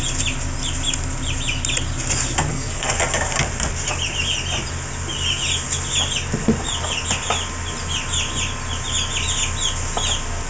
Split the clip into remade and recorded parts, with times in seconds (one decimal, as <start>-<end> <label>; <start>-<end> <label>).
0.0-2.5 recorded; 2.5-3.0 remade; 3.0-10.5 recorded